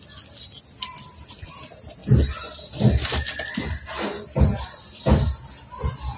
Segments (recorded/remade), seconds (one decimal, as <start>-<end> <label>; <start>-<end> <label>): 0.0-6.2 recorded